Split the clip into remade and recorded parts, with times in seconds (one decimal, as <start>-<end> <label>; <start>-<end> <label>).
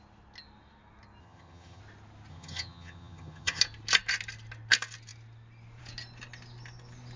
0.0-1.2 recorded; 1.2-1.8 remade; 1.8-2.3 recorded; 2.3-3.6 remade; 3.6-7.2 recorded